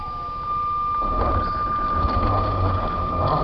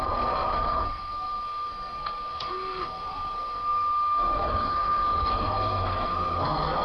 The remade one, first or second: second